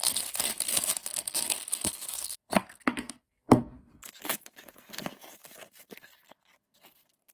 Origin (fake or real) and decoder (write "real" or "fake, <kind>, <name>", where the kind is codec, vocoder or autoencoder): fake, codec, SNAC